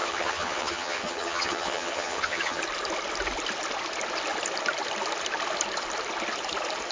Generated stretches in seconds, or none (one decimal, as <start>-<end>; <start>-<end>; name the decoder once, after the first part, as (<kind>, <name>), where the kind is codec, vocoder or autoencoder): 0.0-2.6 (vocoder, HiFi-GAN)

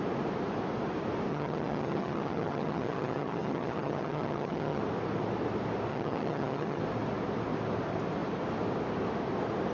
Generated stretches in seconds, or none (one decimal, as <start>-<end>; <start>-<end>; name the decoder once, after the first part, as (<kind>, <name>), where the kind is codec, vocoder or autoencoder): 1.3-4.8 (vocoder, HiFi-GAN); 5.9-6.8